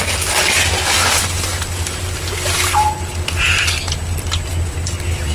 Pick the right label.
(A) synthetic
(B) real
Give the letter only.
B